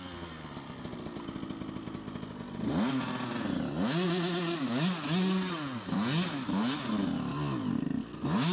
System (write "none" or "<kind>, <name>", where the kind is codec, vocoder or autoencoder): none